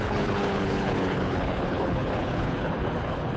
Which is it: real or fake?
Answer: fake